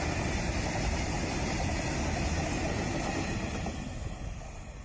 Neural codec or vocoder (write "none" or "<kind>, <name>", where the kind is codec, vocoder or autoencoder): none